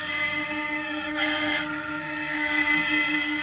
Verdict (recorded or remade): remade